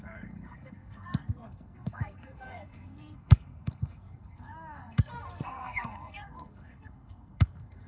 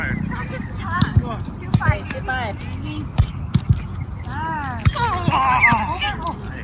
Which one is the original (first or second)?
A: second